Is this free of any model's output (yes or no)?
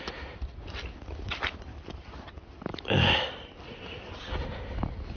yes